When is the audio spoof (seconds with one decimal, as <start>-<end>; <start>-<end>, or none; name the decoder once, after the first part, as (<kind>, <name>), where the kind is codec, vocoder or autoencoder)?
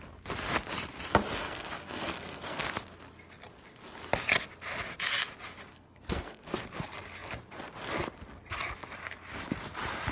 1.4-2.6 (codec, SNAC); 5.7-6.4